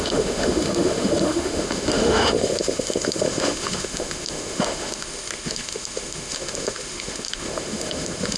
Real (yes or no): no